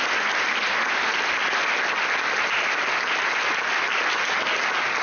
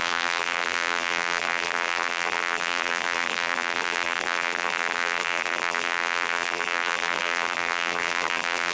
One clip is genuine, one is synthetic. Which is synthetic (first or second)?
second